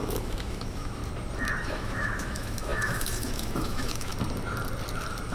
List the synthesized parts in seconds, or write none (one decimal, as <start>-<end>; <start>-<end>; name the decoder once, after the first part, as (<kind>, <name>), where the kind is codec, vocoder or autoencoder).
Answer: 0.0-1.0 (autoencoder, DAC-VAE); 1.6-4.1